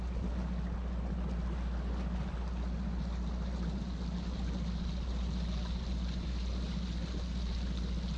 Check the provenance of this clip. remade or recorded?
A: recorded